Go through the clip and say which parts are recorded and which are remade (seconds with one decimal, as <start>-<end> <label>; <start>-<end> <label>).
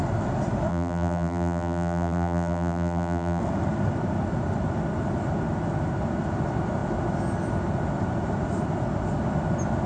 0.0-0.7 recorded; 0.7-3.4 remade; 3.4-9.9 recorded